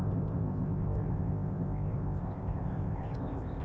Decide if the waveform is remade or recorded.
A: remade